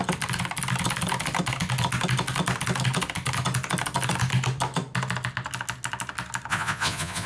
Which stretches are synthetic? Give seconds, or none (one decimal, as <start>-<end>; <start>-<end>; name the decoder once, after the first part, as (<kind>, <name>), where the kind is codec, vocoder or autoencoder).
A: 6.5-7.3 (vocoder, Vocos)